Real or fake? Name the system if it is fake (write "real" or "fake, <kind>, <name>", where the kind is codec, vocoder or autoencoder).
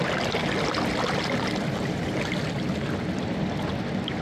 real